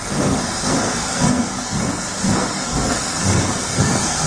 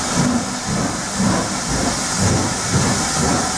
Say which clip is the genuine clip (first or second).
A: second